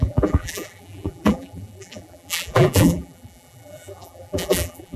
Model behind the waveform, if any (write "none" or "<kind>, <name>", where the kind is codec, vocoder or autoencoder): vocoder, BigVGAN v2